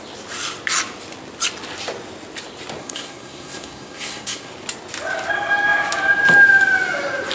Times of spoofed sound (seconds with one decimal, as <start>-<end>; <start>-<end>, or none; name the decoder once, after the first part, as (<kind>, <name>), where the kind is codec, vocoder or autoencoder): 2.8-4.5 (codec, SNAC)